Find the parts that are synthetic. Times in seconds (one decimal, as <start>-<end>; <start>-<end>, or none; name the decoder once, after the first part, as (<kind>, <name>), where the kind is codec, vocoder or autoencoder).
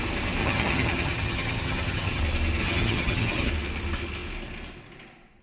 0.4-2.2 (vocoder, HiFi-GAN); 2.6-3.5